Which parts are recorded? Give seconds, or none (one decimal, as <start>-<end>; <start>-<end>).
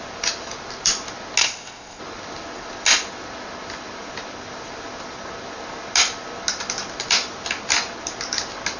0.0-1.4; 2.0-8.8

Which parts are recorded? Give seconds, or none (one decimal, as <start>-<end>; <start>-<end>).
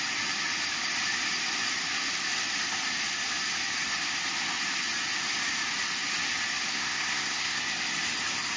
0.0-6.7; 7.6-8.6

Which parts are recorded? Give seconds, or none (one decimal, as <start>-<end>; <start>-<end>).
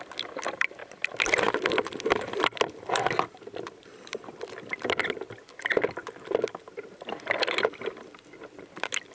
0.0-0.8; 4.9-9.1